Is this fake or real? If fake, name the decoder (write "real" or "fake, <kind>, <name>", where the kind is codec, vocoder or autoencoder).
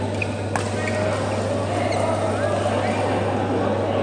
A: real